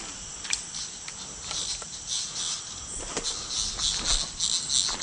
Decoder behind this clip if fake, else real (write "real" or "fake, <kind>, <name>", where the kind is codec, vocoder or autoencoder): real